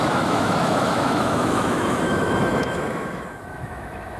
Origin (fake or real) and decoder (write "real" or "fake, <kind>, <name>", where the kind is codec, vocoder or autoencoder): fake, autoencoder, DAC-VAE